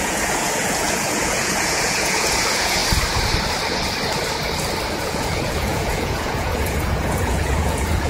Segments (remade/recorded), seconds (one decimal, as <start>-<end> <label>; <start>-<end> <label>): 0.0-2.8 remade; 2.8-5.0 recorded; 5.0-8.1 remade